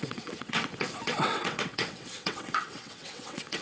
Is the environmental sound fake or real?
fake